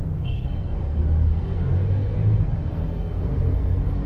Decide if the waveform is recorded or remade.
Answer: remade